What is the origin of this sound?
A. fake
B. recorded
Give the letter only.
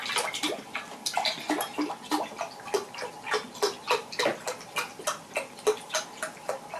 B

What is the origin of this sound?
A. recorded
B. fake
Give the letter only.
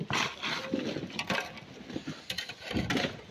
A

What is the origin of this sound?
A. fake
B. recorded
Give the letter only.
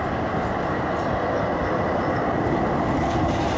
B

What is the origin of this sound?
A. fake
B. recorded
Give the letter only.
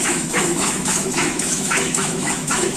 A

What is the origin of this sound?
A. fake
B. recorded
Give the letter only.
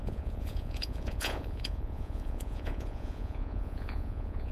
A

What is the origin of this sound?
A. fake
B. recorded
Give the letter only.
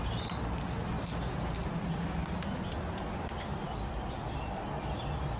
B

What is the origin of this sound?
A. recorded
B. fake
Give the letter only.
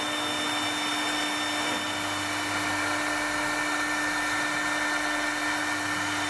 A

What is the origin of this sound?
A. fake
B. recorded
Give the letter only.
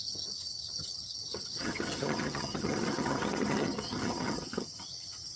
A